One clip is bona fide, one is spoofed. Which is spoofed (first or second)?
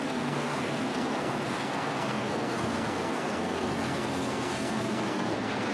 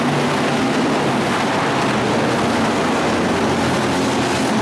first